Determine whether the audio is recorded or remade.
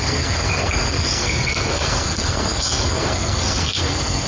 remade